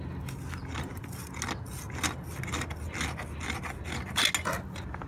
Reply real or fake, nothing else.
real